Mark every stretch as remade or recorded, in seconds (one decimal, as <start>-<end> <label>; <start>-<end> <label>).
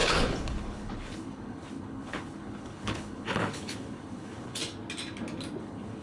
0.0-4.6 remade; 4.6-5.6 recorded; 5.6-6.0 remade